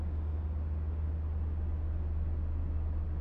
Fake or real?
real